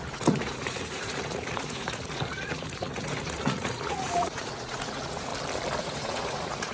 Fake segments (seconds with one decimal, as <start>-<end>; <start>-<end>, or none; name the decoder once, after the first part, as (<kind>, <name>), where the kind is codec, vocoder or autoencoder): 0.0-5.3 (vocoder, Vocos); 5.8-6.7